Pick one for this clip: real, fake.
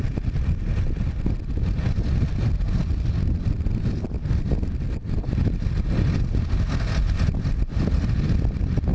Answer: real